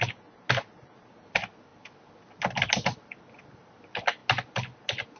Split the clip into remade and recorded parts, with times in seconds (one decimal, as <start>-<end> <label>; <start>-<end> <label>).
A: 0.0-5.2 recorded